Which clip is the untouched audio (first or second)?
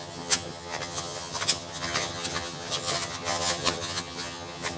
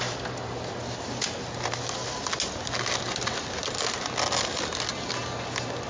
second